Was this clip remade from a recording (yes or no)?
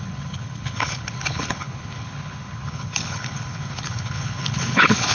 yes